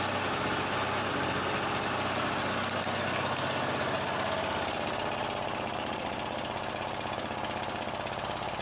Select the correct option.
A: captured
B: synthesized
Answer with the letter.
A